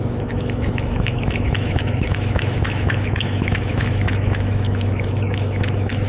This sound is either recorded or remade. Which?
remade